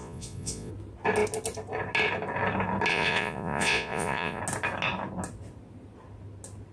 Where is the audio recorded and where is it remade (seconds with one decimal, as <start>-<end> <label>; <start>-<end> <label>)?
0.0-0.7 remade; 0.7-2.9 recorded; 2.9-4.4 remade; 4.4-6.7 recorded

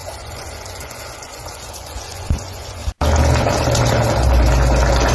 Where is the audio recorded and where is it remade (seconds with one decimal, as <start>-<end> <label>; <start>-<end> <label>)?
0.0-2.8 remade; 2.8-5.1 recorded

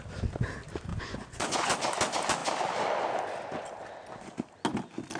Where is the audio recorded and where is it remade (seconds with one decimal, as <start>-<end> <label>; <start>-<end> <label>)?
0.0-0.9 recorded; 0.9-1.7 remade; 1.7-5.2 recorded